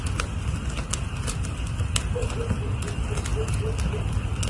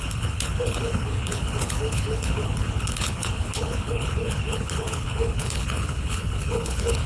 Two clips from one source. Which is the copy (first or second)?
second